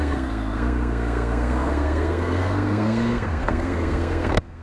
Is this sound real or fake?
fake